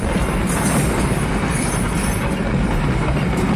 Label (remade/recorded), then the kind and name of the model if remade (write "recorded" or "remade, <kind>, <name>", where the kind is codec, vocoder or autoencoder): recorded